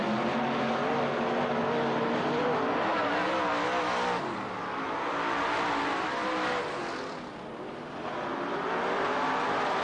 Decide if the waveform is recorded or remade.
recorded